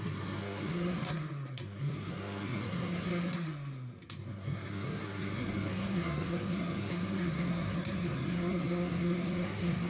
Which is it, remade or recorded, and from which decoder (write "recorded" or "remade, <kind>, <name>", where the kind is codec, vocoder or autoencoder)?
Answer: remade, codec, SNAC